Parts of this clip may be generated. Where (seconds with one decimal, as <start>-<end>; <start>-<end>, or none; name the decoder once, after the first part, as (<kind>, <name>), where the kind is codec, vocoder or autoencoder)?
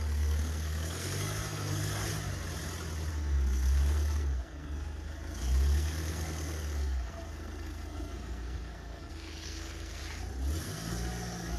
0.0-2.1 (codec, SNAC); 3.1-10.0; 10.6-11.6